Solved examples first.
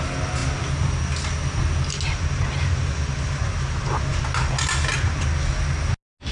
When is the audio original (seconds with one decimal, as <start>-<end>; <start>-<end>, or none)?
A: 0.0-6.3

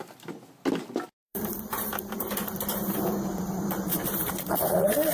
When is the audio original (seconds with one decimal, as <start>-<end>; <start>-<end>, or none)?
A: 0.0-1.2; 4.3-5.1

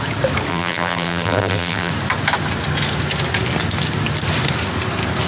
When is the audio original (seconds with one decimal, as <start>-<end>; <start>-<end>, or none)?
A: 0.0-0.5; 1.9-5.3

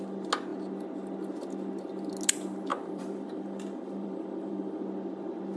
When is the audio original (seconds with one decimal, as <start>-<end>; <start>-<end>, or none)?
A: 0.0-2.7; 4.8-5.6

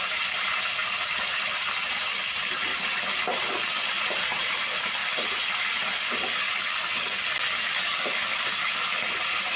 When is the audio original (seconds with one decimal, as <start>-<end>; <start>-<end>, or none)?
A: 2.7-4.0; 5.0-9.1